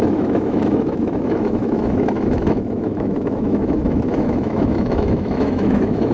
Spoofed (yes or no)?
yes